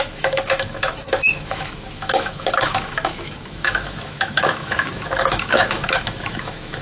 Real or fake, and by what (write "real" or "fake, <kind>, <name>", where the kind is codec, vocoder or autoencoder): fake, autoencoder, DAC-VAE